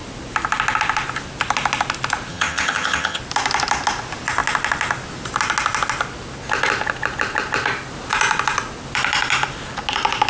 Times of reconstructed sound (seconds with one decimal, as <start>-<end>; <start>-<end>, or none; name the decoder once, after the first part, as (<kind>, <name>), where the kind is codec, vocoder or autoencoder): 2.3-3.2 (vocoder, HiFi-GAN)